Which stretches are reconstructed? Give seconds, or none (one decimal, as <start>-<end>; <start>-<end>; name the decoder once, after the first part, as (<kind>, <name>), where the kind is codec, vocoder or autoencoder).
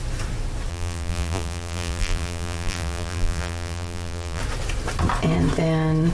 0.7-4.4 (vocoder, BigVGAN v2)